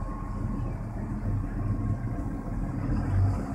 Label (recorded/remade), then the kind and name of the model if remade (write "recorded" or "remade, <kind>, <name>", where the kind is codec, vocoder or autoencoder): recorded